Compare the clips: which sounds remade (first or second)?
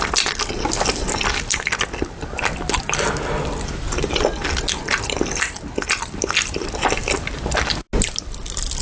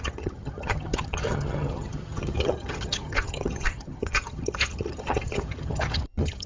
second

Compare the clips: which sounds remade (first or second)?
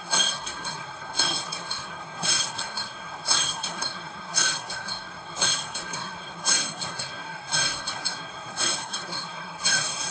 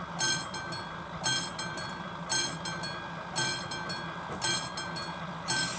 first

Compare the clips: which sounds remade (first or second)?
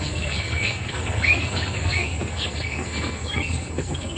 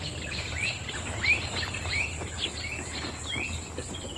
first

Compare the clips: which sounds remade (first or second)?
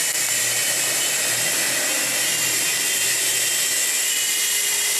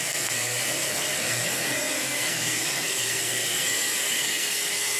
second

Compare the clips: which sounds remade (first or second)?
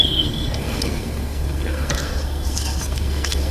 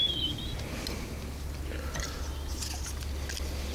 first